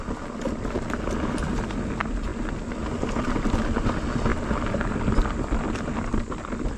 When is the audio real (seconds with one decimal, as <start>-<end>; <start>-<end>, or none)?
0.0-6.8